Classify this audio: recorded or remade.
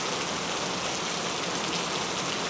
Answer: recorded